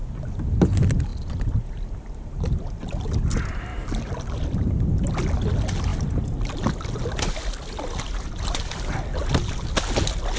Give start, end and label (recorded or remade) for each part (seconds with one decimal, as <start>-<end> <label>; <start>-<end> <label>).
0.0-10.4 recorded